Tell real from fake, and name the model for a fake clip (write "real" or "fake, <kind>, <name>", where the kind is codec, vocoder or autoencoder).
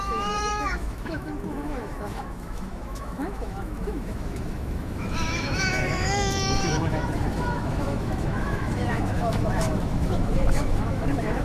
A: fake, autoencoder, DAC-VAE